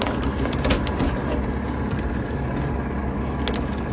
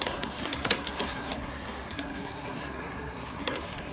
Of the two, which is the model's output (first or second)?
second